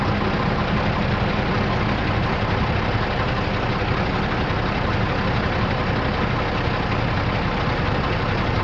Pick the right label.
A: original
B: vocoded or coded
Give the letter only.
A